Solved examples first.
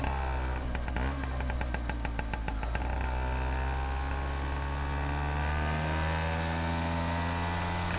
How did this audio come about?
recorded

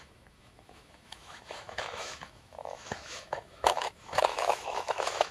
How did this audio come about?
remade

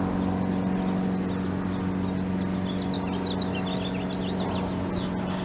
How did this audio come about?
recorded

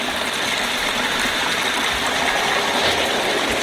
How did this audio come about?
recorded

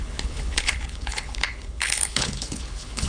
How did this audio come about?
remade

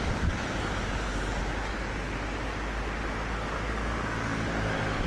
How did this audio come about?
recorded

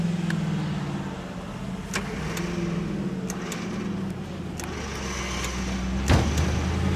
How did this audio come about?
recorded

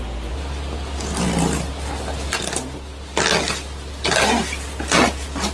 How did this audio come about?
recorded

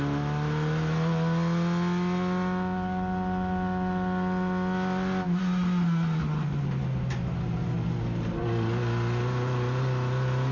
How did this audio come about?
recorded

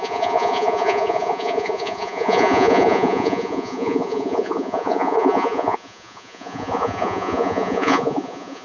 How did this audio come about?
remade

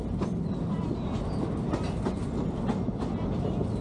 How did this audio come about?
recorded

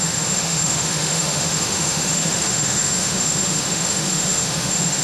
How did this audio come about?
remade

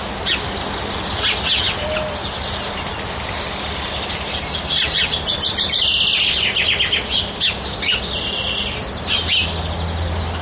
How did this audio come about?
recorded